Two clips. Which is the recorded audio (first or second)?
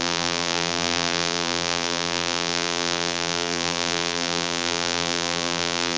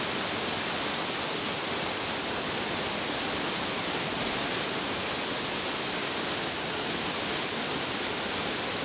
second